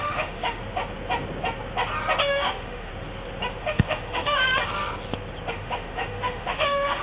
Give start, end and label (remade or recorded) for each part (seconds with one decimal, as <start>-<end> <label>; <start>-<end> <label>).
0.0-0.6 remade; 0.6-2.2 recorded; 2.2-2.9 remade; 2.9-3.6 recorded; 3.6-4.4 remade; 4.4-5.5 recorded; 5.5-7.0 remade